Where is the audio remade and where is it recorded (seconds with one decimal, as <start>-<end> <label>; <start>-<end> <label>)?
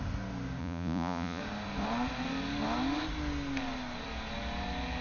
0.0-0.6 recorded; 0.6-1.4 remade; 1.4-5.0 recorded